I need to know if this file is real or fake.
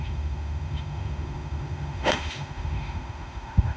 fake